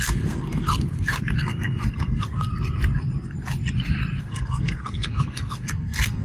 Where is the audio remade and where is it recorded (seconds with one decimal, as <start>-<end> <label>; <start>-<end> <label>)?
0.0-2.5 remade; 2.5-4.2 recorded; 4.2-6.2 remade